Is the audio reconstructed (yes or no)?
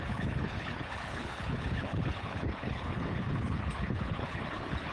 yes